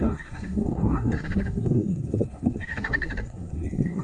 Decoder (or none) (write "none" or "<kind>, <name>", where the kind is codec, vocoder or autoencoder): codec, SNAC